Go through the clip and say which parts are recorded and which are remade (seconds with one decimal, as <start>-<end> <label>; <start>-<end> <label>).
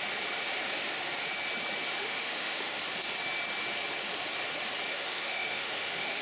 0.0-2.0 recorded; 2.0-2.8 remade; 2.8-4.9 recorded; 4.9-6.2 remade